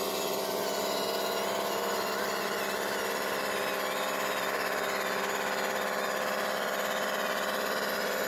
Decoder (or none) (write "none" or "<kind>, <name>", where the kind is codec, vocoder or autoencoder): none